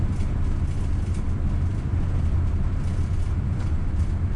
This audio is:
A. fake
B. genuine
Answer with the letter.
B